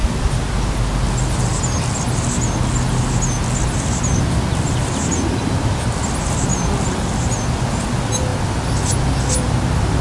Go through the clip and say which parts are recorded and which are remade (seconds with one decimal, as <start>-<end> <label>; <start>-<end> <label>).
0.0-10.0 recorded